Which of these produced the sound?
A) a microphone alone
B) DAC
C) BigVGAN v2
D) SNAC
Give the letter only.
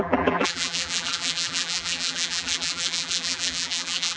C